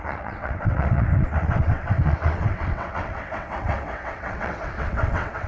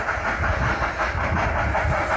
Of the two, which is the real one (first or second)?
second